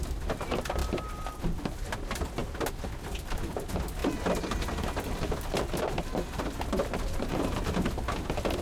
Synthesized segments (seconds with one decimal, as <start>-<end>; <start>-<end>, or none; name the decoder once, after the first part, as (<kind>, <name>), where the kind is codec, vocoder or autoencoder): none